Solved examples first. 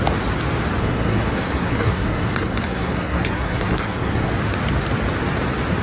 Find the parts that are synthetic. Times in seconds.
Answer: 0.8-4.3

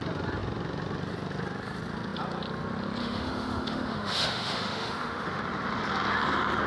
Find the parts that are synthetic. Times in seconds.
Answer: 3.0-5.4

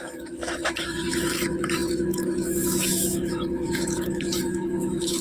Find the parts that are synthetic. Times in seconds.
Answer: 0.0-5.2

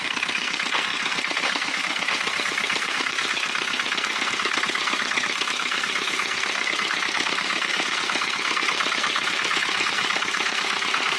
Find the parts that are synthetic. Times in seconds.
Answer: 0.0-11.2

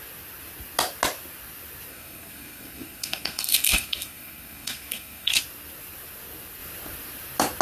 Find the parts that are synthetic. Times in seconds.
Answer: 1.9-5.4